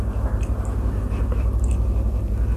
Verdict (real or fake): real